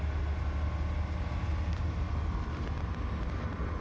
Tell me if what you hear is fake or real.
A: real